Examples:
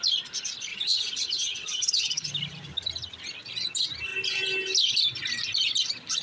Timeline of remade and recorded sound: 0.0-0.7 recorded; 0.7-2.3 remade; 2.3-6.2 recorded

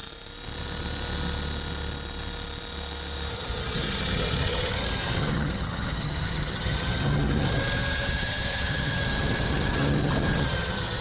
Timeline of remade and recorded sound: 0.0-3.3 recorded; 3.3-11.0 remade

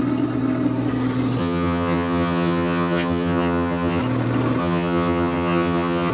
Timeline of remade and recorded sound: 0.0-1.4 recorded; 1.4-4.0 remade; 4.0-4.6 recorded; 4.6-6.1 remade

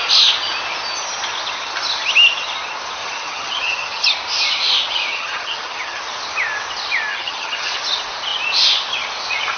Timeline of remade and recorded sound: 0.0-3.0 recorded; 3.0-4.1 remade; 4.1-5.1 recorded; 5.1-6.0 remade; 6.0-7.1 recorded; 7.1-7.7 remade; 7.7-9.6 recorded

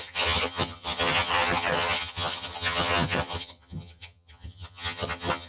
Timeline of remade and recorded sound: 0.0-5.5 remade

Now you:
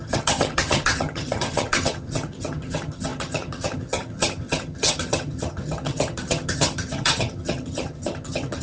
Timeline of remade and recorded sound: 0.0-8.6 remade

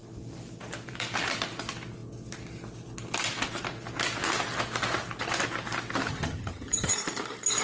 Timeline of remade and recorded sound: 0.0-6.1 recorded; 6.1-6.9 remade; 6.9-7.6 recorded